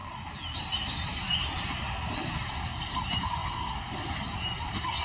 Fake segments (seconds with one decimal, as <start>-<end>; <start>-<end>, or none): 0.0-3.4; 4.1-5.0